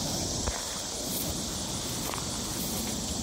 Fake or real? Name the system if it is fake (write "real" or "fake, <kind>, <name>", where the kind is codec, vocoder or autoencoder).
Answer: real